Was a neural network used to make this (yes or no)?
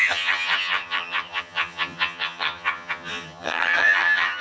yes